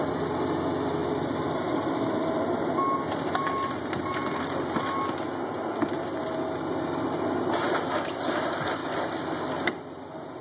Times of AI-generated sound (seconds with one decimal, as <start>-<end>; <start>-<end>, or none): 1.0-2.7; 3.4-4.1; 8.8-9.5